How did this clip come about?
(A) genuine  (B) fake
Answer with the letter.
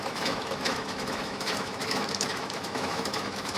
B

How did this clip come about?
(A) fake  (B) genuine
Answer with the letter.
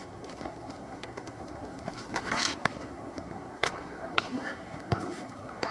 A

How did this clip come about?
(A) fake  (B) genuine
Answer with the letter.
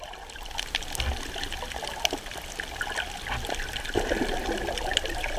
B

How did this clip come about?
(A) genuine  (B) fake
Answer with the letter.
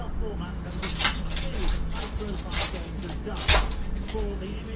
A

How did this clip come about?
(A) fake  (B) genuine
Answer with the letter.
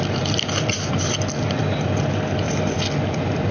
B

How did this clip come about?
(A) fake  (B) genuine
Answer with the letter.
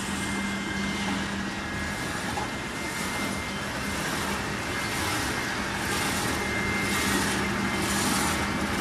B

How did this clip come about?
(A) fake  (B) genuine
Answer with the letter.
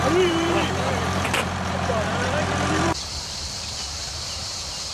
A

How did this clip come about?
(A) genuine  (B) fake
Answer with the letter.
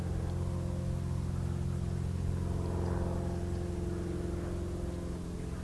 A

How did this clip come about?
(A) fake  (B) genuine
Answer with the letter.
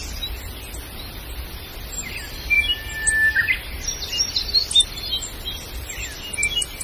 B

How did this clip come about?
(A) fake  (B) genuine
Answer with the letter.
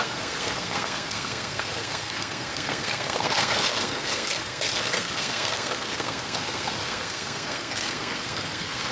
A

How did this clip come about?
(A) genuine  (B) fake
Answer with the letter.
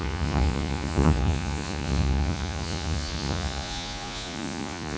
B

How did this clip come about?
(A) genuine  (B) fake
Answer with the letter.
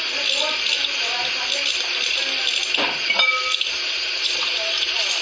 A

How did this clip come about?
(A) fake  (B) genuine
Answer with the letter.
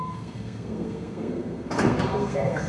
A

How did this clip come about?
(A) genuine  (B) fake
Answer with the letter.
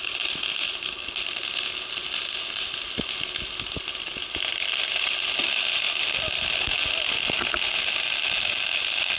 A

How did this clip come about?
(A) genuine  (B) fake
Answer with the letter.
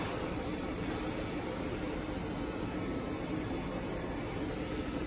A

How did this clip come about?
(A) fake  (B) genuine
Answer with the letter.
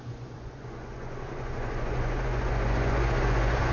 A